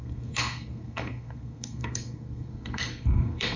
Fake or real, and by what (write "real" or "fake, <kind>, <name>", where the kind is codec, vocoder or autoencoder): fake, codec, SNAC